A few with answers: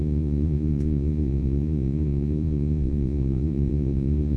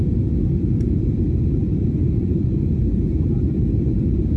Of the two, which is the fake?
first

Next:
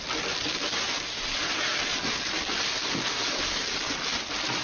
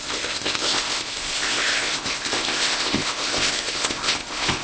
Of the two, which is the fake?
second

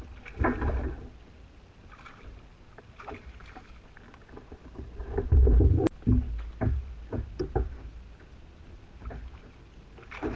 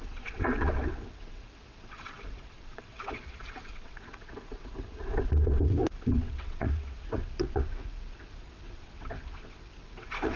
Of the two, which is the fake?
second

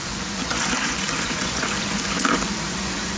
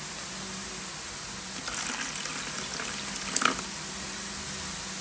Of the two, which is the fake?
first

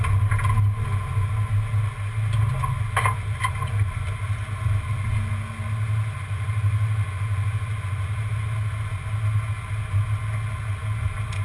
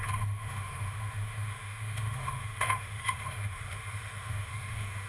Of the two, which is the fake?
second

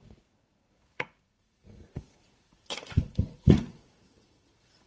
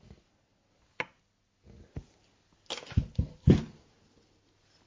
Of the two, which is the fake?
first